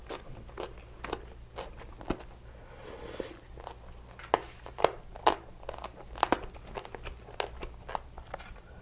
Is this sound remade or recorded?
recorded